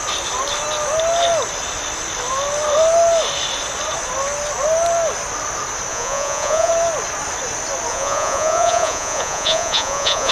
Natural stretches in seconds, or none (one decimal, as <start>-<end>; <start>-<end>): 0.0-5.9; 6.7-7.9